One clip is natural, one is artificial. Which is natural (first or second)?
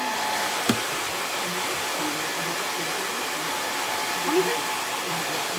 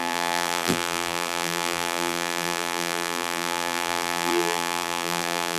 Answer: first